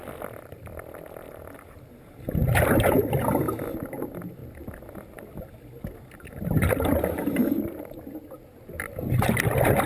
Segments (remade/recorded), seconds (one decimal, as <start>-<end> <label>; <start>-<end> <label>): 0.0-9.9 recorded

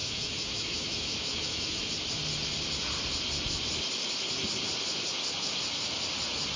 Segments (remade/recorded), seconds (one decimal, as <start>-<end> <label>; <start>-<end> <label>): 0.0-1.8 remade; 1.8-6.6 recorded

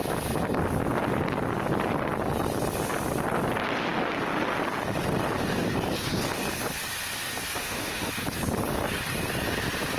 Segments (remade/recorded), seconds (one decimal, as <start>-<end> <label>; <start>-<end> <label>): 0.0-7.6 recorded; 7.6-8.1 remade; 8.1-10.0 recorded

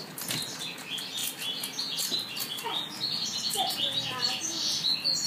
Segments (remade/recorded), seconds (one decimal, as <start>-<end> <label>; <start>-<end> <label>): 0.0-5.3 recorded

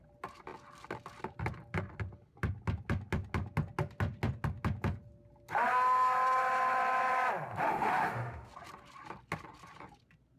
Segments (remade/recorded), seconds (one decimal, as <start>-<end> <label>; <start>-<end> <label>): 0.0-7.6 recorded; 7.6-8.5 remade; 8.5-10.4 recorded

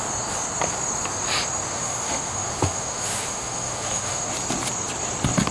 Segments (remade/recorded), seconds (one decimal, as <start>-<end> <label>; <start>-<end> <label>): 0.0-1.7 recorded; 1.7-4.3 remade; 4.3-5.5 recorded